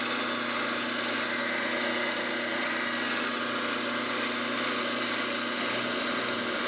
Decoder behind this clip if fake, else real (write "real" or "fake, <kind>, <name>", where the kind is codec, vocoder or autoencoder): real